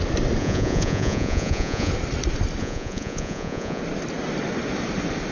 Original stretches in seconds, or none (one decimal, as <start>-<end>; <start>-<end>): 0.0-0.4; 1.9-2.6; 3.8-5.3